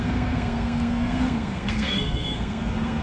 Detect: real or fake fake